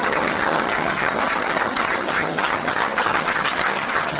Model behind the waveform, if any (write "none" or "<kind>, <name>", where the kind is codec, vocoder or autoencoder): vocoder, HiFi-GAN